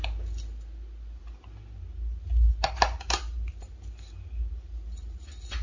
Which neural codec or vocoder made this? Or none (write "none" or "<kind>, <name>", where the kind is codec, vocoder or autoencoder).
none